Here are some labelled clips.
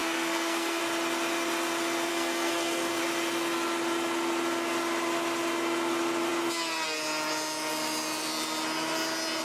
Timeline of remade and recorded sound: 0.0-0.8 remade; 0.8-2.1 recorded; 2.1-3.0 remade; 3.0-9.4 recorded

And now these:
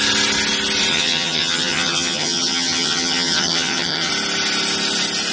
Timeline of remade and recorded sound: 0.0-0.9 recorded; 0.9-4.1 remade; 4.1-5.3 recorded

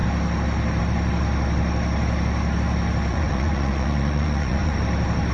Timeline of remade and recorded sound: 0.0-3.1 recorded; 3.1-4.8 remade; 4.8-5.3 recorded